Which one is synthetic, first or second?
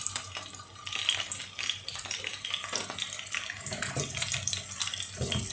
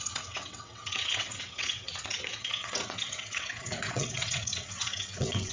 second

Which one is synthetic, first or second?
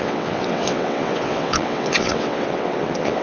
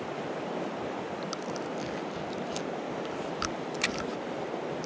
first